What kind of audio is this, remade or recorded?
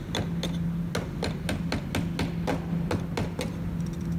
recorded